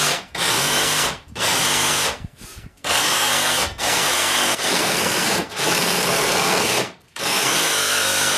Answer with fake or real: fake